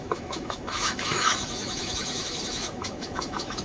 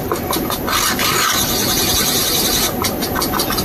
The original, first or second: second